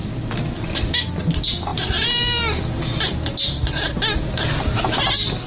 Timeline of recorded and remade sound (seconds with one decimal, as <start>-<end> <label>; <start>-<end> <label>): 0.0-5.5 recorded